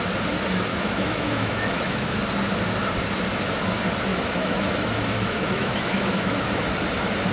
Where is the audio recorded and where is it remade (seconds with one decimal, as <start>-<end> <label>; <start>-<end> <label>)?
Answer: 0.0-0.7 recorded; 0.7-2.2 remade; 2.2-4.1 recorded; 4.1-6.4 remade; 6.4-7.3 recorded